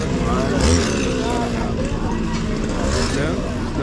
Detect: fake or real real